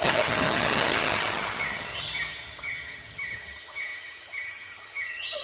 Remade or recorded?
remade